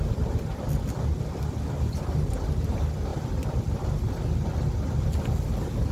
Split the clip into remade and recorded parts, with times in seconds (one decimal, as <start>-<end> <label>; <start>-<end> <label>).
0.0-5.9 recorded